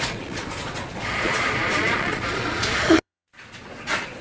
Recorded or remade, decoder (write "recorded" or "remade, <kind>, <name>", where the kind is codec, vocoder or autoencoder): remade, vocoder, Vocos